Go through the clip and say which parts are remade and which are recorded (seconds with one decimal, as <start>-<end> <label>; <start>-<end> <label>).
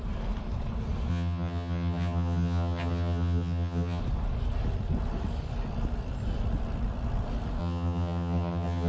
0.0-1.1 recorded; 1.1-4.0 remade; 4.0-7.6 recorded; 7.6-8.9 remade